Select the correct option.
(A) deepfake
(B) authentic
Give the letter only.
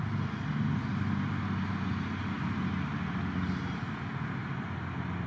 B